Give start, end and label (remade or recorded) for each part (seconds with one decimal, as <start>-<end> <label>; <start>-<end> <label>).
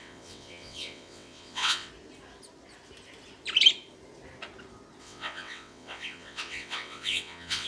0.0-1.9 remade; 1.9-5.0 recorded; 5.0-7.7 remade